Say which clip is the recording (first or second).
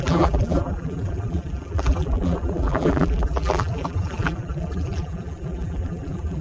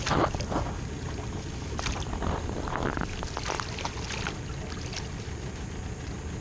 second